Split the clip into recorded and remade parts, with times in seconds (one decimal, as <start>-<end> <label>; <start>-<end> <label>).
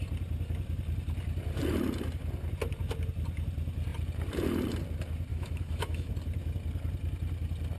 0.0-5.3 recorded; 5.3-6.1 remade; 6.1-7.8 recorded